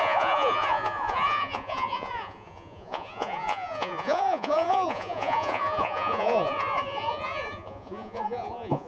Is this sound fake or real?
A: fake